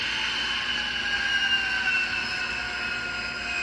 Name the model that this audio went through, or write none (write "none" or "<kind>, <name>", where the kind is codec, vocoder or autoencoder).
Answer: none